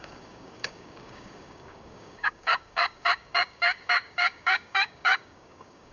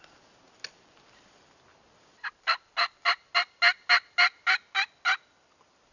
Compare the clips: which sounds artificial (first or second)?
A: first